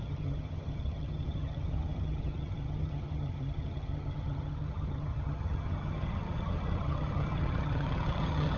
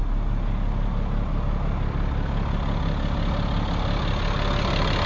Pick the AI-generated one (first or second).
first